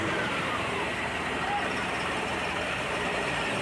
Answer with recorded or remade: remade